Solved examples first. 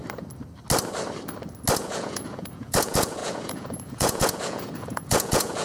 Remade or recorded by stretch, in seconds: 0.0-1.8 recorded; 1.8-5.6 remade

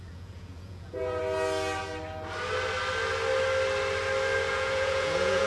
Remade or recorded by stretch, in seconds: 0.0-1.2 remade; 1.2-4.5 recorded; 4.5-5.5 remade

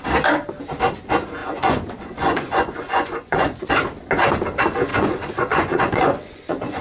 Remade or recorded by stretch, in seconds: 0.0-1.4 recorded; 1.4-3.7 remade; 3.7-4.9 recorded; 4.9-6.8 remade

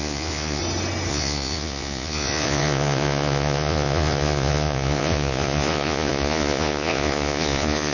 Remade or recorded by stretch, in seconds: 0.0-0.6 remade; 0.6-1.1 recorded; 1.1-7.9 remade

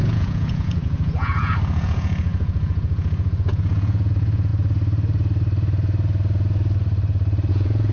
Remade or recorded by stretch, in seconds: 0.0-4.5 remade; 4.5-7.5 recorded; 7.5-7.9 remade

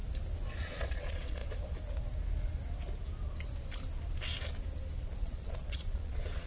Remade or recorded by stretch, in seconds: 0.0-0.6 recorded; 0.6-1.4 remade; 1.4-5.2 recorded; 5.2-6.5 remade

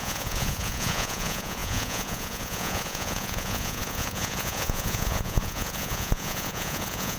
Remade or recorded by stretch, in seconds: 0.0-7.2 remade